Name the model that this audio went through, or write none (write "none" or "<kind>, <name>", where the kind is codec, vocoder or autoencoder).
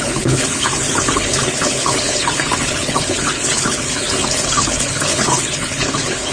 codec, HILCodec